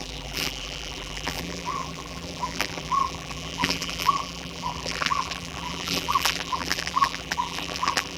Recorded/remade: remade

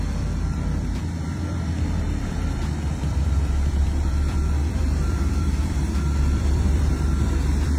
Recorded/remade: remade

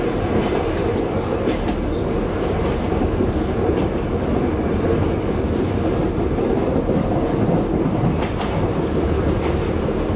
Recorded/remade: recorded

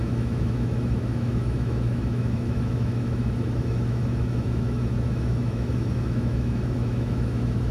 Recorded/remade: remade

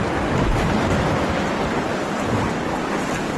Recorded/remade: recorded